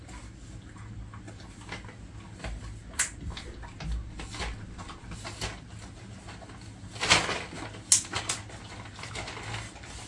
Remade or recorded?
recorded